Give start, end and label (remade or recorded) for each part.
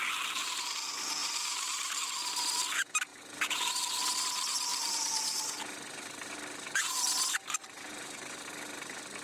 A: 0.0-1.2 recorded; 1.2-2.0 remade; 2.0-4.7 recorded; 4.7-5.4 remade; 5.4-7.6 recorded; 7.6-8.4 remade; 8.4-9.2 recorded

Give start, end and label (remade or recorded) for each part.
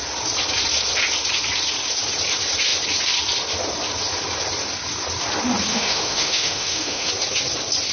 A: 0.0-5.7 recorded; 5.7-7.1 remade; 7.1-7.9 recorded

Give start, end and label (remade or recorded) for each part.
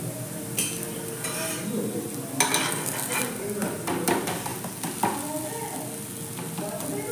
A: 0.0-7.1 recorded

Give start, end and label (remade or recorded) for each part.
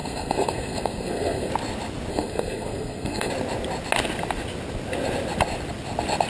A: 0.0-1.5 remade; 1.5-2.1 recorded; 2.1-3.3 remade; 3.3-6.3 recorded